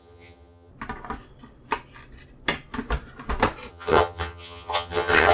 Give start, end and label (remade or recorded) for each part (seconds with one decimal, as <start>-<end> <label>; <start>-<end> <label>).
0.0-0.7 remade; 0.7-3.7 recorded; 3.7-5.3 remade